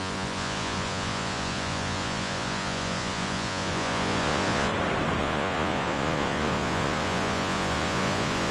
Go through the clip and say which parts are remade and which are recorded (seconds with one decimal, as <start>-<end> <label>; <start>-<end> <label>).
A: 0.0-4.7 remade; 4.7-5.2 recorded; 5.2-8.5 remade